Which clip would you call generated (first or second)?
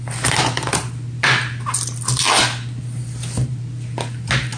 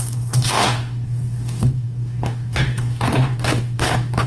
second